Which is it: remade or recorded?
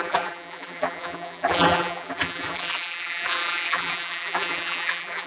remade